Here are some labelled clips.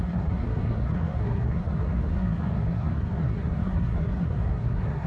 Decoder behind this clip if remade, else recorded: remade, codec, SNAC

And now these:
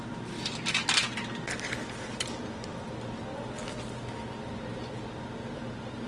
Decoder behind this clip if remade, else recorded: recorded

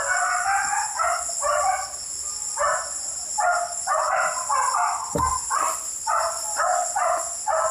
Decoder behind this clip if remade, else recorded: recorded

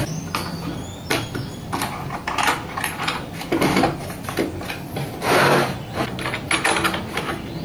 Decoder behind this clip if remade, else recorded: recorded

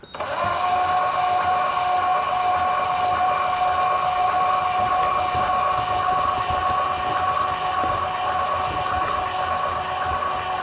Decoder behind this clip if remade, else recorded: recorded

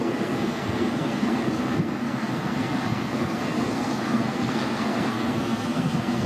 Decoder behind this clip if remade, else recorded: remade, codec, SNAC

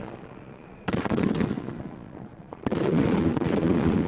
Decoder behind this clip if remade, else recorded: remade, vocoder, Vocos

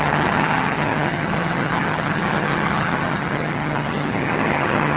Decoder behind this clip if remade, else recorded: remade, vocoder, HiFi-GAN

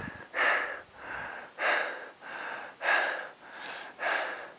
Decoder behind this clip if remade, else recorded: recorded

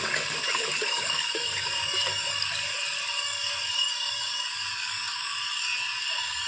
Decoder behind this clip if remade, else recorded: remade, codec, DAC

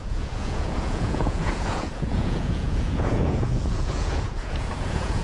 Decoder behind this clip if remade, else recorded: remade, vocoder, Vocos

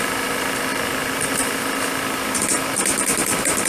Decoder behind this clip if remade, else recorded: remade, vocoder, BigVGAN v2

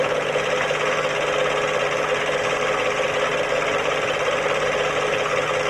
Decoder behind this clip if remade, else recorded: recorded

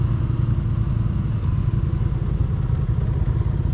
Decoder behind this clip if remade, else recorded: recorded